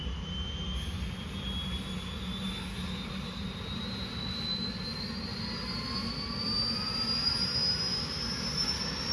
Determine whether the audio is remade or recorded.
recorded